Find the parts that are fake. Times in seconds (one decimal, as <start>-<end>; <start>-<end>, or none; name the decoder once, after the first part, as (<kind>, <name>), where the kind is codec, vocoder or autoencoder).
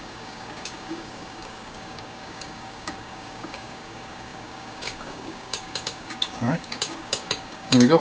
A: 0.0-8.0 (codec, DAC)